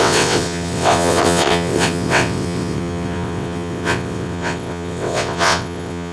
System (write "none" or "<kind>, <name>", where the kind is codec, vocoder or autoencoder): vocoder, WaveNeXt